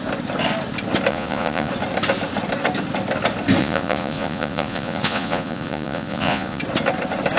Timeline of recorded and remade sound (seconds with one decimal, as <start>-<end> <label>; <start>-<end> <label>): 0.0-1.1 recorded; 1.1-1.7 remade; 1.7-3.6 recorded; 3.6-6.6 remade; 6.6-7.4 recorded